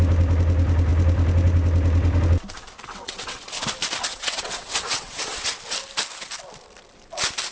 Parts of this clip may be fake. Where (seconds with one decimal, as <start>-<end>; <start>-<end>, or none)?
2.8-3.4; 4.1-5.6